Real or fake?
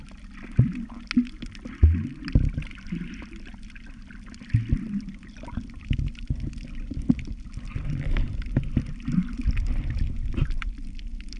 real